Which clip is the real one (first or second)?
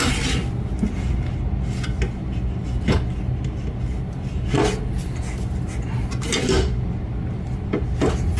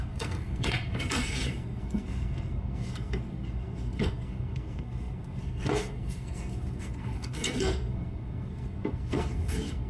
first